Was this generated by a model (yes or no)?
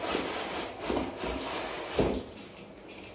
no